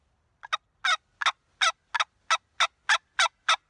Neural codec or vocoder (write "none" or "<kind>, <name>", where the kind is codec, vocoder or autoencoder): none